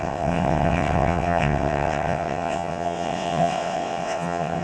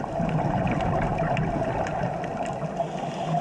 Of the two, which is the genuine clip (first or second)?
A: second